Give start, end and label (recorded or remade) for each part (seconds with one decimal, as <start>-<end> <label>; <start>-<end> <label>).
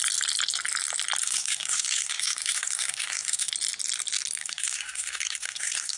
0.0-1.2 recorded; 1.2-3.5 remade; 3.5-4.4 recorded; 4.4-6.0 remade